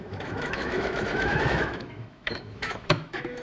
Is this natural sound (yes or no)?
no